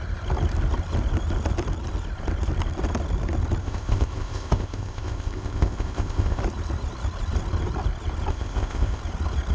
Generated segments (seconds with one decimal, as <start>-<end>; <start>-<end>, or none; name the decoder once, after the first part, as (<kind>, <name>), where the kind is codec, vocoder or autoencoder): 3.6-6.4 (codec, ZipCodec); 8.3-9.0